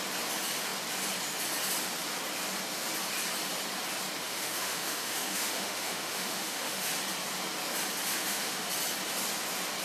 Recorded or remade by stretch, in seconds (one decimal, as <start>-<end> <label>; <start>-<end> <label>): 0.0-4.2 recorded; 4.2-6.9 remade; 6.9-8.1 recorded; 8.1-8.7 remade; 8.7-9.8 recorded